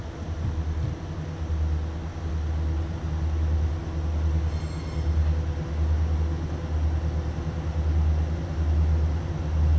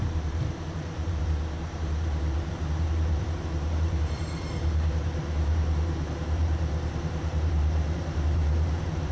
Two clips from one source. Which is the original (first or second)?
first